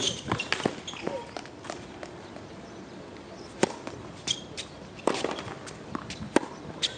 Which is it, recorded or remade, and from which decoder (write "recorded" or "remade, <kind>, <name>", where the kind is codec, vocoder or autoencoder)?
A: recorded